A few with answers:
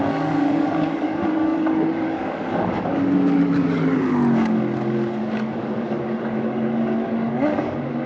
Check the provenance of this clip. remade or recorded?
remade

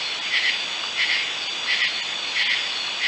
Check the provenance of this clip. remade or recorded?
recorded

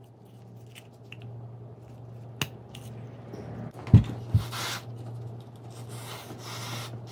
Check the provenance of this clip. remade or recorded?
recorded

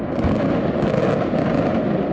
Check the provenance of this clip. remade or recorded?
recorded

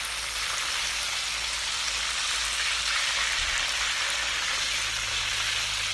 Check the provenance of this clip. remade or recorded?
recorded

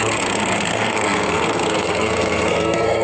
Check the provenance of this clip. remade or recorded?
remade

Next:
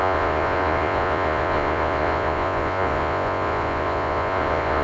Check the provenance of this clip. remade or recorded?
remade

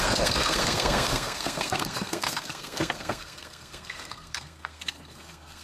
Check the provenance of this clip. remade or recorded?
remade